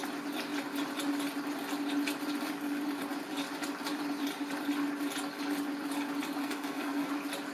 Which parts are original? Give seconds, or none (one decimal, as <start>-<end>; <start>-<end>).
0.0-6.4; 7.1-7.5